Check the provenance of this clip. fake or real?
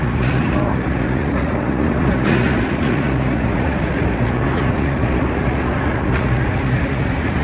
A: fake